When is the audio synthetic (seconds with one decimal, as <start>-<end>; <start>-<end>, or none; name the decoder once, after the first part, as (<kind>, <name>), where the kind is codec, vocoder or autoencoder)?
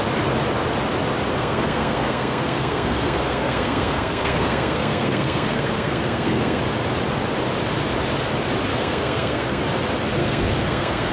1.4-6.6 (codec, SNAC); 8.7-9.6; 10.2-11.1